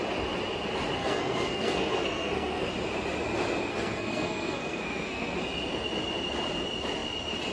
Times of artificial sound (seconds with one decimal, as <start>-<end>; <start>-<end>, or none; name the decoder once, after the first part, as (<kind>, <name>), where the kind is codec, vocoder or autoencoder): 1.0-2.7 (codec, SNAC); 3.7-5.4